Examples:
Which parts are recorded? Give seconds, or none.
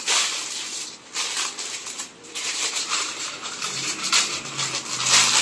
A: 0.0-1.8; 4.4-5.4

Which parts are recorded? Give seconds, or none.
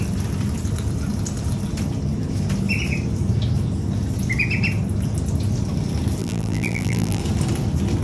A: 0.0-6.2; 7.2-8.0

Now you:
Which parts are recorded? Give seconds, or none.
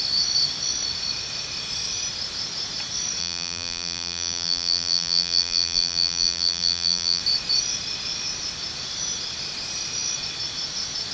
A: 0.0-3.2; 7.2-11.1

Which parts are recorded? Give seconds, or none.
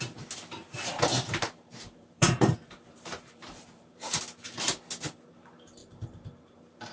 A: 0.0-1.1; 4.2-5.8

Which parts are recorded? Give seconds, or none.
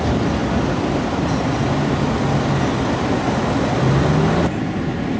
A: 0.0-5.2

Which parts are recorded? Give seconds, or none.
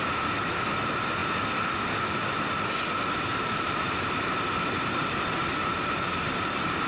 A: 0.0-3.3; 5.1-5.7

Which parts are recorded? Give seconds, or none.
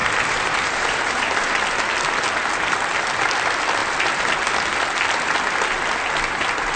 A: 1.4-6.8